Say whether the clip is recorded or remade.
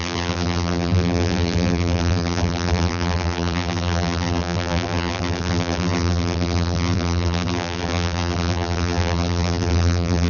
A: remade